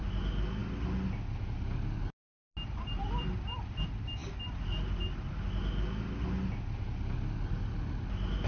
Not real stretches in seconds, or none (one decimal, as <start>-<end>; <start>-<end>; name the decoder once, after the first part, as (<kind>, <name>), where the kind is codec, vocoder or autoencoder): none